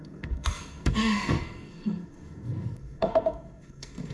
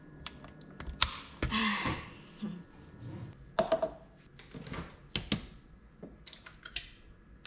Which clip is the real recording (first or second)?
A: second